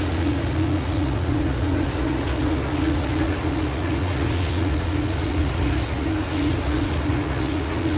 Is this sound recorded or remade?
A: remade